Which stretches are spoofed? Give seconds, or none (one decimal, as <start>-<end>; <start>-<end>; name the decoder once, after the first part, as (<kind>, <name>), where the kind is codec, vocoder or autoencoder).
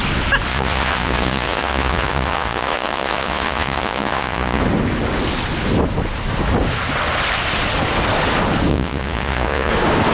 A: 0.5-4.6 (vocoder, Vocos); 8.7-9.7